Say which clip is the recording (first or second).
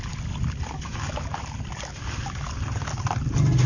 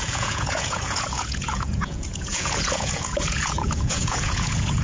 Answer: first